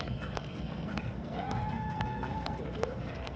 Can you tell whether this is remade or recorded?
remade